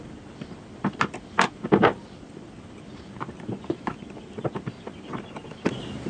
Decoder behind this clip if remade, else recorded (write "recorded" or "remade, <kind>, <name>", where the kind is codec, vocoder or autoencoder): recorded